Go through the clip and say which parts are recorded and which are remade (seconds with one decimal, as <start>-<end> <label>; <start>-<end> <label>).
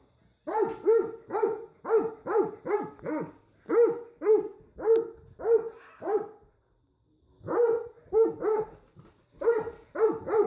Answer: 0.0-10.5 recorded